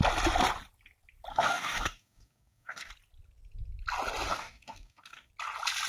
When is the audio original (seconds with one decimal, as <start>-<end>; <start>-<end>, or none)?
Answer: 0.0-1.3; 2.9-4.3; 5.3-5.9